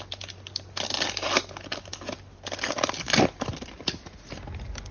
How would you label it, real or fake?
real